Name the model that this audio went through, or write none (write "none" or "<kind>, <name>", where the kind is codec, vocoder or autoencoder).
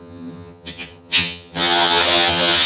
vocoder, HiFi-GAN